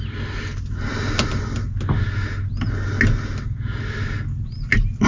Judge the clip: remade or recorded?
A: recorded